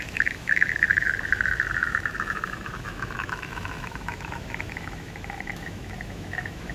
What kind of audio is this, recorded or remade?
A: remade